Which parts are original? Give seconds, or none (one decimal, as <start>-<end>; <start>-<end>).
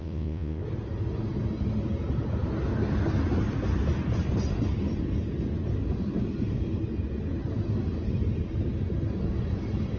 0.6-10.0